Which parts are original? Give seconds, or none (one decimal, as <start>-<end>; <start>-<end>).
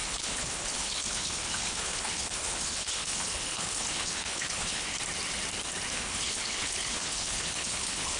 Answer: 4.9-5.9